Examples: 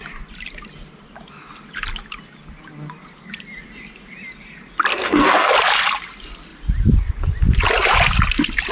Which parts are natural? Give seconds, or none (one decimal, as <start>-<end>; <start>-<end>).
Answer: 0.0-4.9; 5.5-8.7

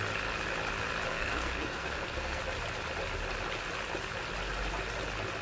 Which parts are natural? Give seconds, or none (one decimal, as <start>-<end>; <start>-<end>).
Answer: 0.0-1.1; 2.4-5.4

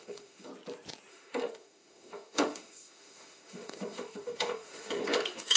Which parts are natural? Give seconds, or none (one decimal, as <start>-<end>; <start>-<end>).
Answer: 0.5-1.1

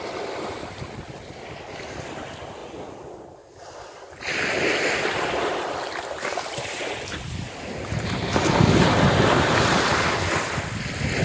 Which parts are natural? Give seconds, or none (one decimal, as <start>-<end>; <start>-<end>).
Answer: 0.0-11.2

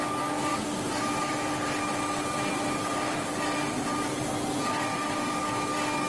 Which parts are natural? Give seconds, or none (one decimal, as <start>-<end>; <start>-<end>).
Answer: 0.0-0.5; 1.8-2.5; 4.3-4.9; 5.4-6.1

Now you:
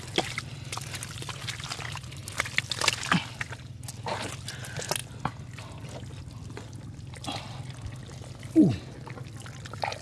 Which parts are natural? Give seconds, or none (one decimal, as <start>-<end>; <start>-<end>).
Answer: 0.0-10.0